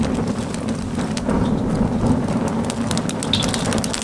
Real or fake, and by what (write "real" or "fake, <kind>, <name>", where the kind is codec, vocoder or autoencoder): real